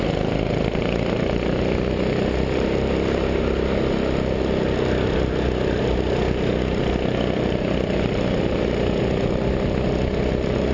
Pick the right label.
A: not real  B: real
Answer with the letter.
B